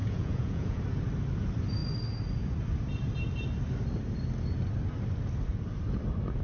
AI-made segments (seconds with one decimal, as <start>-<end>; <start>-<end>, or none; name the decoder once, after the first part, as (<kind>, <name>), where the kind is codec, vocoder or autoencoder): 0.0-0.8 (vocoder, Vocos)